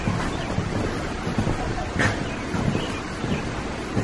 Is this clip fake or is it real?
real